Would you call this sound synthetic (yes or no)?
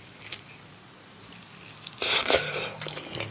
no